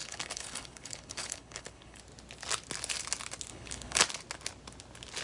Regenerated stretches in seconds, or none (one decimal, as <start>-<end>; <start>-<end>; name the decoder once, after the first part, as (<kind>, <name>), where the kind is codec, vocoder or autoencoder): 0.0-2.0 (codec, HILCodec); 3.5-4.0